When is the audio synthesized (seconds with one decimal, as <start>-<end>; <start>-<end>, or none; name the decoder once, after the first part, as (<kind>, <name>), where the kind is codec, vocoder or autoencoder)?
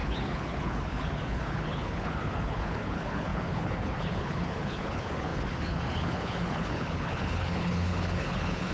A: 0.0-8.7 (codec, HILCodec)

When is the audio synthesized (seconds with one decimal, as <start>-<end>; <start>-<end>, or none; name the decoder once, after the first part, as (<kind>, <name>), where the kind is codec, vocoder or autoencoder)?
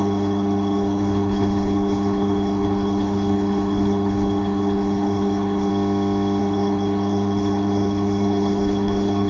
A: 0.0-5.7 (codec, HILCodec); 6.4-9.3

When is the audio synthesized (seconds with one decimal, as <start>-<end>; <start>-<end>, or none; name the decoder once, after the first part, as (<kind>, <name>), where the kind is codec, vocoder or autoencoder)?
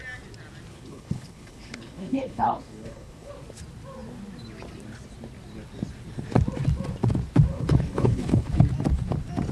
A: 0.7-3.3 (codec, HILCodec); 7.5-8.6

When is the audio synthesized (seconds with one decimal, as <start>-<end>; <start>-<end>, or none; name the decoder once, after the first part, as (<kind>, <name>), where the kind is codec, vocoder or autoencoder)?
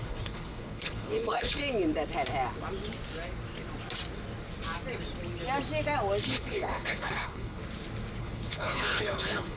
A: 0.0-1.6 (codec, HILCodec); 6.2-7.6; 8.2-9.6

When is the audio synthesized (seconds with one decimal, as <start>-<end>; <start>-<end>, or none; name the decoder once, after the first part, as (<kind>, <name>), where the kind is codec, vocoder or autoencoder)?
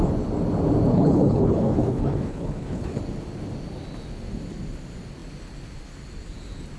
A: 0.9-3.0 (codec, HILCodec)